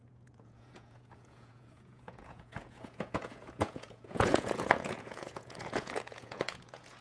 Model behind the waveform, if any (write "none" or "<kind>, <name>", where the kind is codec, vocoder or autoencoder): vocoder, Vocos